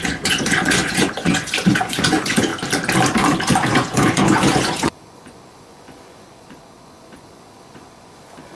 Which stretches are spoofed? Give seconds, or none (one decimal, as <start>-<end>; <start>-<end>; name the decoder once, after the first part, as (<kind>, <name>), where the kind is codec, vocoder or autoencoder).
0.0-2.5 (vocoder, Vocos); 3.7-8.5